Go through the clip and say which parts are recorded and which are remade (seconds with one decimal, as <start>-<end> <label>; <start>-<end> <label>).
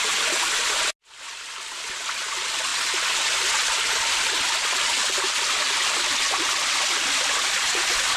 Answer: 0.0-8.2 recorded